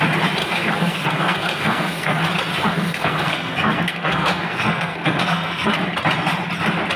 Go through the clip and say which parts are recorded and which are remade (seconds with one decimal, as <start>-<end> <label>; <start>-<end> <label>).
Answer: 0.0-0.4 recorded; 0.4-2.2 remade; 2.2-2.6 recorded; 2.6-5.7 remade; 5.7-7.0 recorded